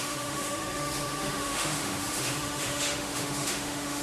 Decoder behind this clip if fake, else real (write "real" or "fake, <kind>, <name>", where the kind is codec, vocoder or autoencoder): fake, autoencoder, DAC-VAE